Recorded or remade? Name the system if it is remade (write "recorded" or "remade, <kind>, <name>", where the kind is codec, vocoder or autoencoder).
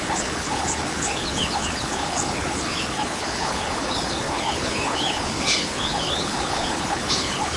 remade, codec, HILCodec